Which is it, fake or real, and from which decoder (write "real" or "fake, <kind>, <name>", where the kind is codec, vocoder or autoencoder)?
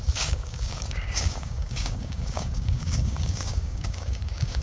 fake, codec, DAC